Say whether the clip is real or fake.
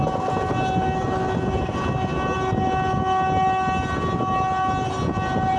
real